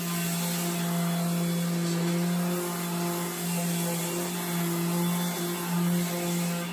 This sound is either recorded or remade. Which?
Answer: recorded